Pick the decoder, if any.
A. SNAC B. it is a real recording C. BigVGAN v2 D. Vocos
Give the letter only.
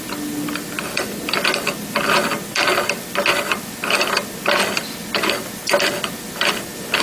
B